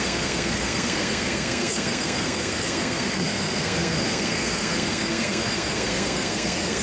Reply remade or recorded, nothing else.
remade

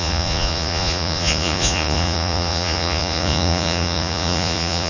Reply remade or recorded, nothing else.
remade